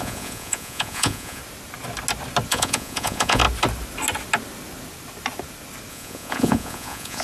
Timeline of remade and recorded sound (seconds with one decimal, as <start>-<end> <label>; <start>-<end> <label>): 0.0-1.4 remade; 1.4-2.5 recorded; 2.5-3.4 remade; 3.4-5.9 recorded; 5.9-7.2 remade